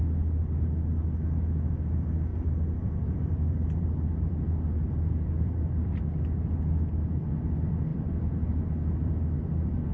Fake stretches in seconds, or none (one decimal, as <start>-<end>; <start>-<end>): 2.3-6.0; 7.9-8.7